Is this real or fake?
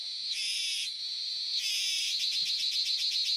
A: real